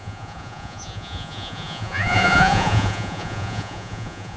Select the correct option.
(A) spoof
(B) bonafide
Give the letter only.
A